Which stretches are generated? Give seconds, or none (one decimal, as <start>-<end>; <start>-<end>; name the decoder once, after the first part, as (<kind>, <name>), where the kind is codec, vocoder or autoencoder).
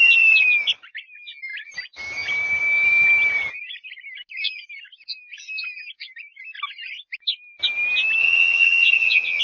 8.2-9.4 (vocoder, HiFi-GAN)